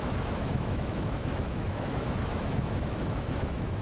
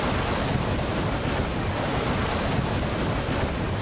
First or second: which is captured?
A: second